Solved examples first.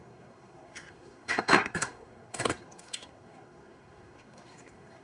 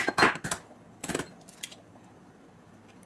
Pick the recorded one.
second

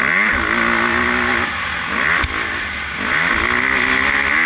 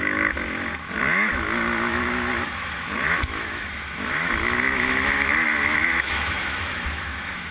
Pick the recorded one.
first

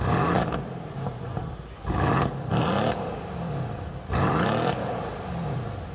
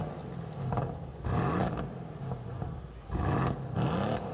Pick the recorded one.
second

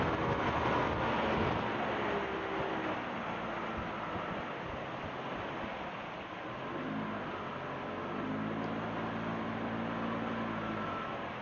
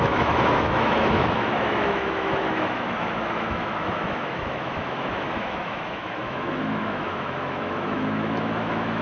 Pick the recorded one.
first